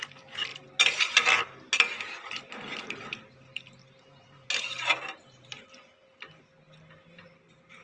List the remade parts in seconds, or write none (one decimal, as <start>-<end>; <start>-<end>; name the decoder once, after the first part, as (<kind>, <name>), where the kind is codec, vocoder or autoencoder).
none